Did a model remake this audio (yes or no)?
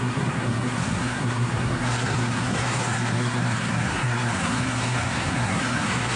yes